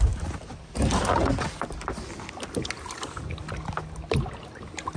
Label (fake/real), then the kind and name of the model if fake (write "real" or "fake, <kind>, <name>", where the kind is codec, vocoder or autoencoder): real